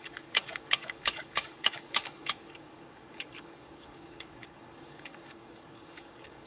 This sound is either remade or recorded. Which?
remade